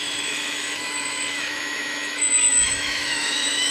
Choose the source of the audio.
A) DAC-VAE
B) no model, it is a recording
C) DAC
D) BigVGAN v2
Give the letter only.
A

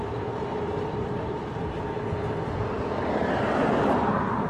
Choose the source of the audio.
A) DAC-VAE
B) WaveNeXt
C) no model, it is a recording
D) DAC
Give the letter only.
C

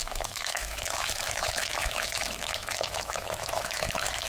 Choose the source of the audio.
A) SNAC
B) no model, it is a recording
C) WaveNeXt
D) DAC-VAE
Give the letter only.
D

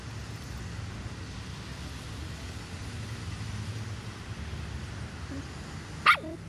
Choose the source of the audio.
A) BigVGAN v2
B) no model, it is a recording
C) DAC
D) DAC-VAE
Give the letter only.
B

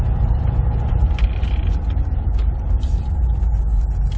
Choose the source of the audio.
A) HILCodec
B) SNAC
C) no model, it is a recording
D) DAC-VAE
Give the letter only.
C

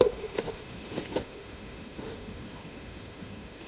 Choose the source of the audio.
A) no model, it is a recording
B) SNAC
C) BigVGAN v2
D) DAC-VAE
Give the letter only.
D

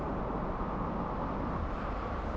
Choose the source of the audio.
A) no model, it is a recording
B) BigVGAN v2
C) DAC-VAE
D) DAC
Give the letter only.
A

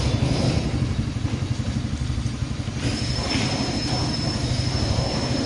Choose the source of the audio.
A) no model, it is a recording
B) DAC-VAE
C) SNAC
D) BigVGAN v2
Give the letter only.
A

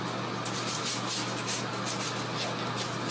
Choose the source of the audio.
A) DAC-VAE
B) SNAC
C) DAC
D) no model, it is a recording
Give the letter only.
D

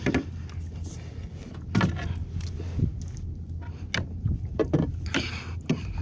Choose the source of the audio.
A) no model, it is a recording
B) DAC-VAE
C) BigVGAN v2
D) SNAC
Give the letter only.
A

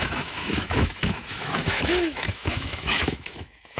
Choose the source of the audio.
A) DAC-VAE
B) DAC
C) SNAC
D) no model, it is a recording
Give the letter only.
A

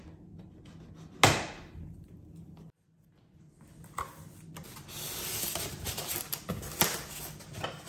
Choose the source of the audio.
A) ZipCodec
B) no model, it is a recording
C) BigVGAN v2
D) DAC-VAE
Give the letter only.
B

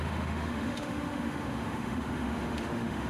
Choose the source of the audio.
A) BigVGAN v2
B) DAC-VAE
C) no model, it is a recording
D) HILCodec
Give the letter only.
B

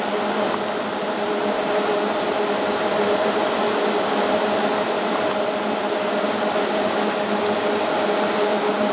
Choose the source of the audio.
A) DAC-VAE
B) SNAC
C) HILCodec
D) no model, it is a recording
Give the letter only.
D